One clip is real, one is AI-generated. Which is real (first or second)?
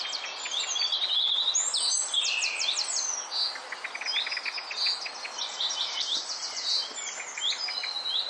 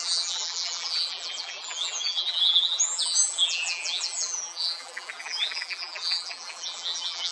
first